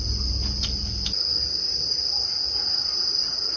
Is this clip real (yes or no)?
yes